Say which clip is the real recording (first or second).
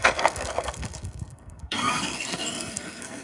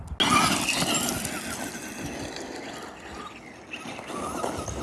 second